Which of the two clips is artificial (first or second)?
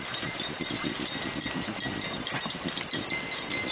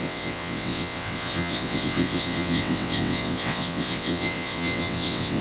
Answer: second